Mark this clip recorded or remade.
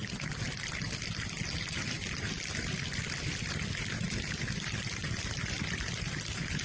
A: recorded